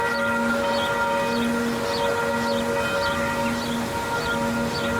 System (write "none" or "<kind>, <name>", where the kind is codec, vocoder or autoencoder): none